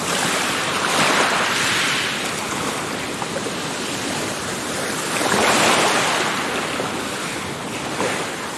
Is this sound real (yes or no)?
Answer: yes